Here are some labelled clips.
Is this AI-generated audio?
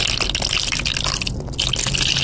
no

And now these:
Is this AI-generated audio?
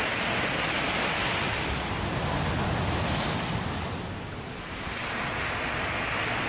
no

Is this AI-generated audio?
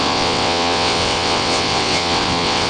yes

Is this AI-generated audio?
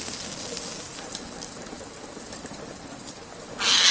no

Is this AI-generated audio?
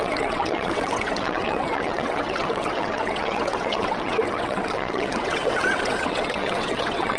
yes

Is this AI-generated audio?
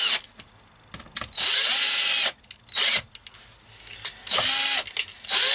no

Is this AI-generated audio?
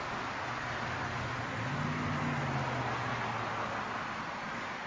no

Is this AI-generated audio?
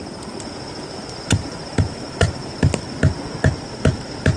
no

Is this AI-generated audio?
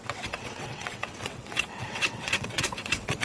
yes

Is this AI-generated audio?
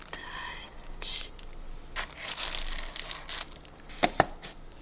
no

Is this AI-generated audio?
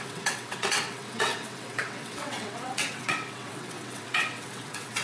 yes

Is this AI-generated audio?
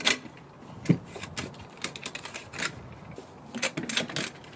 no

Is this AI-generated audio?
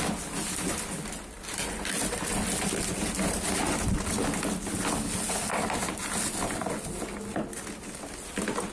no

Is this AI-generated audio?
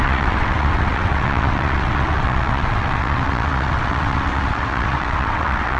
yes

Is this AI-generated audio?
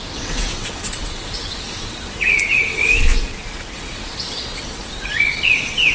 yes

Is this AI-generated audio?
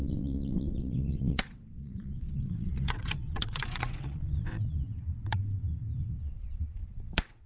yes